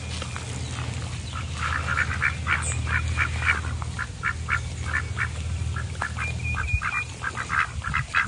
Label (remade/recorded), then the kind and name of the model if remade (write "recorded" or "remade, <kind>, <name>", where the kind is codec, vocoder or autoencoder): recorded